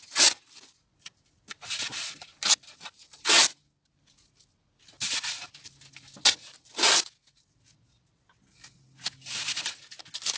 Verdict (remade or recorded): recorded